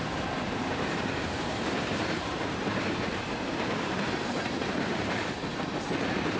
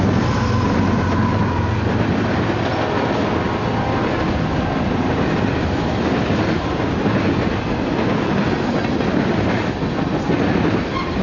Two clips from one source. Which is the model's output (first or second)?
first